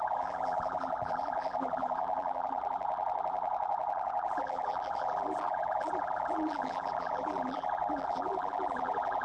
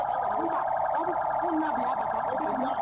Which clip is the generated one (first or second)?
first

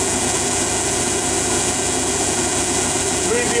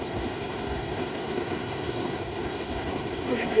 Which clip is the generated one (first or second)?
second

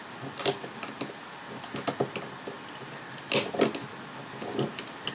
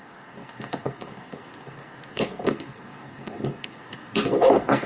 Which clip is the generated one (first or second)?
second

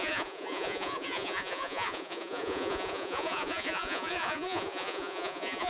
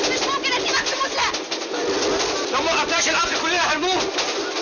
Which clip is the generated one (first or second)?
first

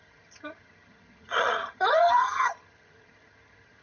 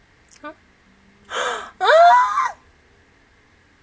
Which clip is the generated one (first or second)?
first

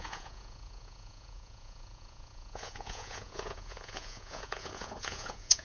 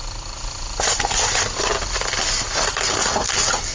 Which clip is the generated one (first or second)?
first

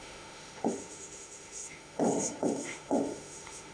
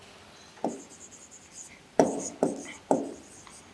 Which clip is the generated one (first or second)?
first